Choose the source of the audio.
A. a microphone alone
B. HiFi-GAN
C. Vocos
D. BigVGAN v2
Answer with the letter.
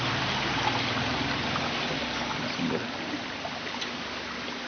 A